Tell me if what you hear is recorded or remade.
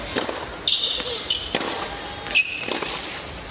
recorded